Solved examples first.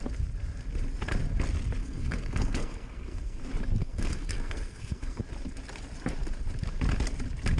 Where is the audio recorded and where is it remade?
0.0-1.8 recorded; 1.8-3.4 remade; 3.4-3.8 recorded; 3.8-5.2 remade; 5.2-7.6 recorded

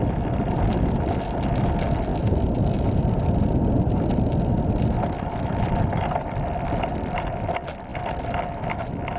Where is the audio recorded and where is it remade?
0.0-9.2 recorded

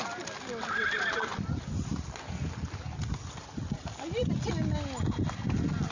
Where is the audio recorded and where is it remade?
0.0-5.9 recorded

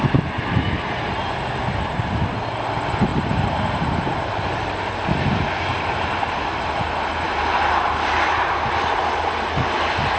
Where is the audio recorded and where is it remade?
0.0-3.1 recorded; 3.1-4.6 remade; 4.6-5.7 recorded; 5.7-8.6 remade; 8.6-10.2 recorded

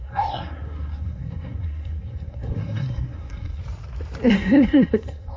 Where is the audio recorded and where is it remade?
0.0-3.6 remade; 3.6-4.3 recorded; 4.3-5.4 remade

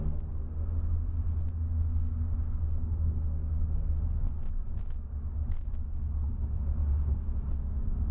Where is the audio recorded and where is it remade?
0.0-8.1 recorded

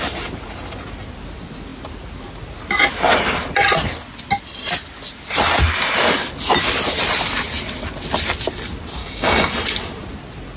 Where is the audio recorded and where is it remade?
0.0-9.0 recorded; 9.0-9.5 remade; 9.5-10.6 recorded